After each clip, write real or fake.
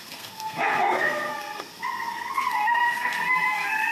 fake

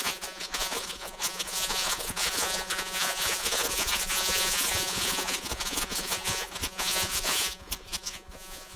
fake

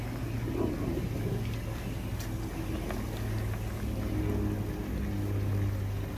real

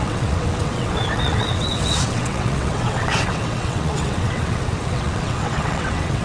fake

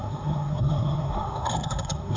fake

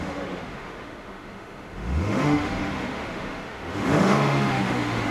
fake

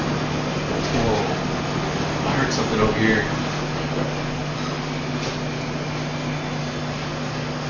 real